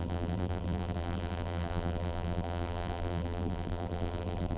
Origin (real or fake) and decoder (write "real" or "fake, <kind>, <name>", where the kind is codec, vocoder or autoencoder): fake, vocoder, BigVGAN v2